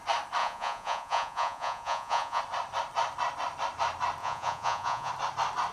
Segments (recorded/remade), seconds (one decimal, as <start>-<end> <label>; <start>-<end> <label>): 0.0-0.4 recorded; 0.4-2.4 remade; 2.4-4.2 recorded; 4.2-5.1 remade; 5.1-5.7 recorded